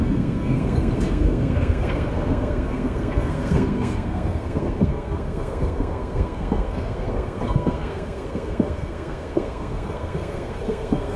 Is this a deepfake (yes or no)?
yes